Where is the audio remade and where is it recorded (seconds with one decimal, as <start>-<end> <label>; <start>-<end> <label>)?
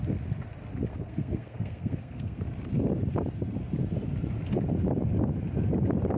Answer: 0.0-0.9 recorded; 0.9-2.4 remade; 2.4-6.2 recorded